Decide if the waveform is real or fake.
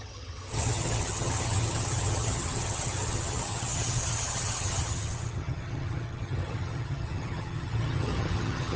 fake